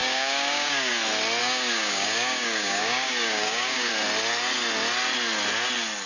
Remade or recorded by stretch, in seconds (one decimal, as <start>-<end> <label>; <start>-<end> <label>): 0.0-0.9 remade; 0.9-1.4 recorded; 1.4-3.9 remade; 3.9-6.1 recorded